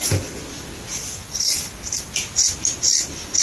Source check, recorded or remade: recorded